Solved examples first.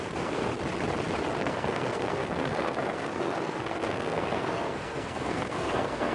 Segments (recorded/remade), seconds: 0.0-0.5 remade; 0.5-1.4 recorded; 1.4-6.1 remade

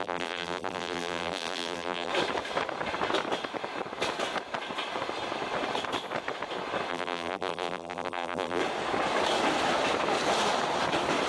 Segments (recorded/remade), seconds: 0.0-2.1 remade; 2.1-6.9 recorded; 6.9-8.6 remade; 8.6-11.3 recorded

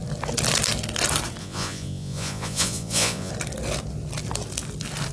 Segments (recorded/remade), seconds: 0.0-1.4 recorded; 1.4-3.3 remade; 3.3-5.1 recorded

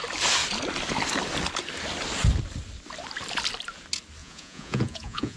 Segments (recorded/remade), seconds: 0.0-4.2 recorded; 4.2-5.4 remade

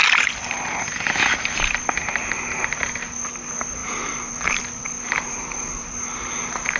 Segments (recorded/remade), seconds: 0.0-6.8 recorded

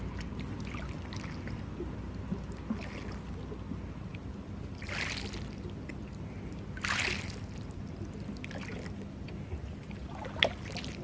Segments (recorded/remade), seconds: 0.0-11.0 recorded